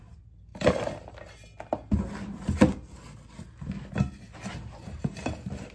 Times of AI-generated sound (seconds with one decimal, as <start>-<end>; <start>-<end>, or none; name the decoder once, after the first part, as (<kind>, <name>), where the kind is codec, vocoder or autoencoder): none